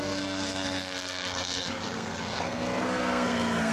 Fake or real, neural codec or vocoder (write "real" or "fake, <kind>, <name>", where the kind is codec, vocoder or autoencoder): fake, codec, SNAC